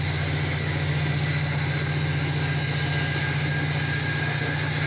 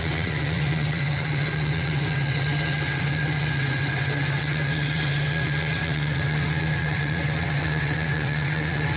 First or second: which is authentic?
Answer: first